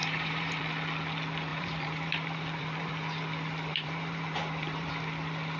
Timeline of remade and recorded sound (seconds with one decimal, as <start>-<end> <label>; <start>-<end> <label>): 0.0-0.6 remade; 0.6-1.5 recorded; 1.5-2.9 remade; 2.9-3.7 recorded; 3.7-4.9 remade; 4.9-5.6 recorded